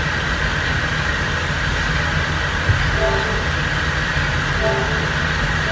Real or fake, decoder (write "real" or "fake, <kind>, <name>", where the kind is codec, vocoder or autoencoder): real